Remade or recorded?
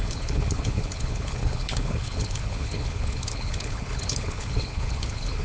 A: remade